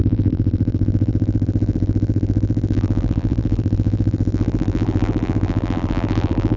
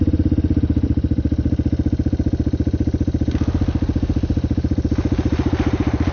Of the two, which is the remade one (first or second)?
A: first